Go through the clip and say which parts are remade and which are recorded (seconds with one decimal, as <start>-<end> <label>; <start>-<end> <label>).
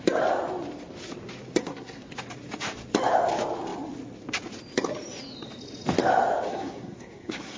0.0-1.6 recorded; 1.6-2.1 remade; 2.1-6.5 recorded; 6.5-7.6 remade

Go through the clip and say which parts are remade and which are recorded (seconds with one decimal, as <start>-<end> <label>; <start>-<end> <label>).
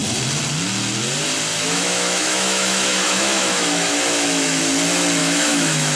0.0-1.5 recorded; 1.5-4.6 remade; 4.6-5.2 recorded; 5.2-6.0 remade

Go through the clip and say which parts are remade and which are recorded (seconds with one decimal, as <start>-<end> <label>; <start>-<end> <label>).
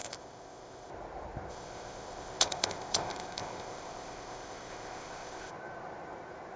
0.0-0.9 remade; 0.9-1.5 recorded; 1.5-5.5 remade; 5.5-6.6 recorded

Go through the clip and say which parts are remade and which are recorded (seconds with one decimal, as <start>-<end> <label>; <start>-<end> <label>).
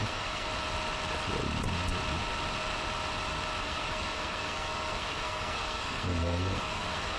0.0-0.5 remade; 0.5-3.6 recorded; 3.6-7.2 remade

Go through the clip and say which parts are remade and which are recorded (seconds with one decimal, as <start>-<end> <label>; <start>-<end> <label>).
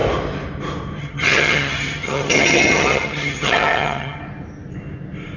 0.0-1.0 recorded; 1.0-4.2 remade; 4.2-5.4 recorded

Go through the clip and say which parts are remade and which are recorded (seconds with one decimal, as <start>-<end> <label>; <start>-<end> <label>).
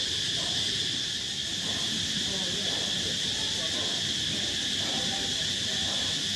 0.0-6.4 recorded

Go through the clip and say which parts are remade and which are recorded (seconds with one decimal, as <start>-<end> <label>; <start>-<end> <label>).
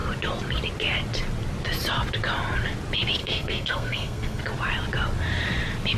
0.0-3.2 recorded; 3.2-4.4 remade; 4.4-6.0 recorded